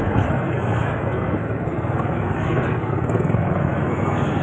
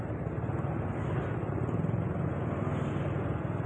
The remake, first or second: first